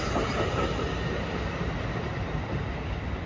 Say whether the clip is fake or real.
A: real